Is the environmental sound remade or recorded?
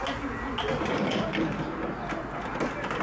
recorded